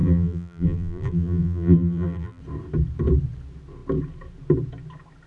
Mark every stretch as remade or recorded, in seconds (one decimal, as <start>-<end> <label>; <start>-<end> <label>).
0.0-2.4 remade; 2.4-5.3 recorded